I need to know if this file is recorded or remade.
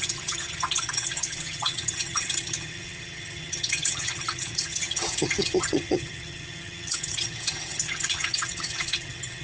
remade